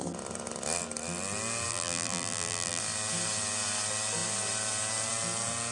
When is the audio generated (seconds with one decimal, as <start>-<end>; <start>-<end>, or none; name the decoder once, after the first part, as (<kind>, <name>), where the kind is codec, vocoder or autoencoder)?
1.7-2.8 (vocoder, BigVGAN v2)